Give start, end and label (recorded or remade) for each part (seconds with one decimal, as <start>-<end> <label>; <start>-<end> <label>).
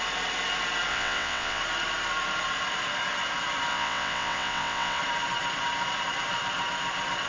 0.0-0.9 recorded; 0.9-1.6 remade; 1.6-3.7 recorded; 3.7-5.0 remade; 5.0-7.3 recorded